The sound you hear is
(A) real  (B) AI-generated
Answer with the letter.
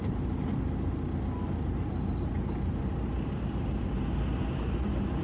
A